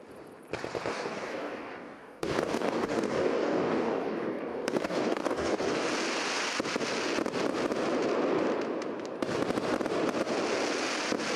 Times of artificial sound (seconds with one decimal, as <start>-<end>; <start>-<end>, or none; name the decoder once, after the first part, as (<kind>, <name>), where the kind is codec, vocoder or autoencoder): 0.9-5.9 (codec, DAC)